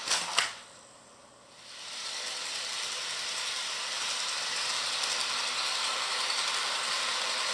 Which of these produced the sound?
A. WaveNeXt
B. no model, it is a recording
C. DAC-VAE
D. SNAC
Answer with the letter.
B